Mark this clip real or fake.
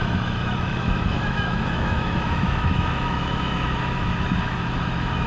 fake